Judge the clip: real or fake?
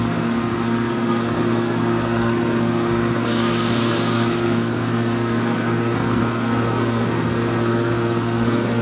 fake